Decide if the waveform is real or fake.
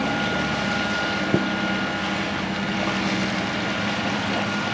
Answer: real